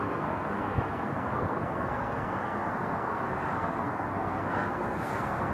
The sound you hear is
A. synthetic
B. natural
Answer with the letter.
A